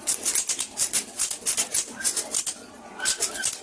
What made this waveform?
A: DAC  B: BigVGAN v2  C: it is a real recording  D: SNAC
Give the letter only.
C